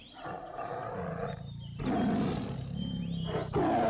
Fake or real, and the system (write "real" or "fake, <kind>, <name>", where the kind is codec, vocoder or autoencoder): real